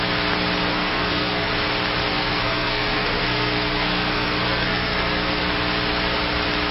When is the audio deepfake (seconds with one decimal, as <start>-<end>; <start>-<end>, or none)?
0.7-1.5; 2.1-5.4